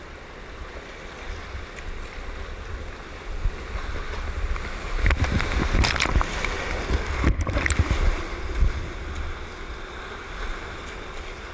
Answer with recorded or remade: recorded